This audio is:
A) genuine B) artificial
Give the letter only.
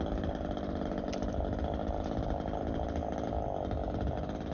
A